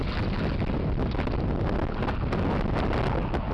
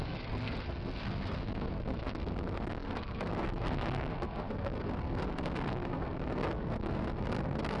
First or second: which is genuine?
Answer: first